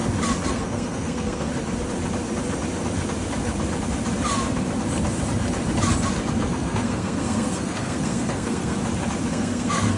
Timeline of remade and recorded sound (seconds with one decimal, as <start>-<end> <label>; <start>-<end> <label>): 0.0-0.5 recorded; 0.5-1.5 remade; 1.5-6.4 recorded; 6.4-8.8 remade; 8.8-9.3 recorded; 9.3-10.0 remade